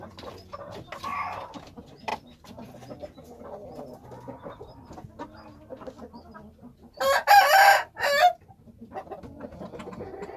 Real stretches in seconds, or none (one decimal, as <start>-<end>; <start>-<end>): 0.0-10.4